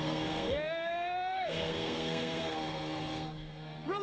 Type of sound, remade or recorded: remade